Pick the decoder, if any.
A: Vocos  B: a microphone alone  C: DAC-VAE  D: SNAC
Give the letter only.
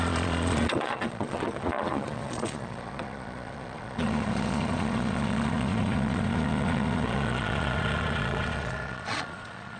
A